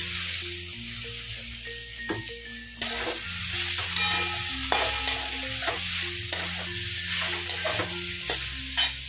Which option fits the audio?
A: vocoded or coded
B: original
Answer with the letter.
B